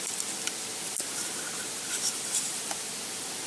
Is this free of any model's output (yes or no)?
no